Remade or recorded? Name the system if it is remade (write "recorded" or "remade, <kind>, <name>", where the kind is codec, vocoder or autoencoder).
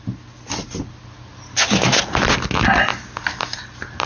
recorded